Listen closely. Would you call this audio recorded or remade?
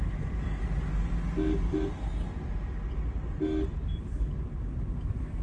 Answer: recorded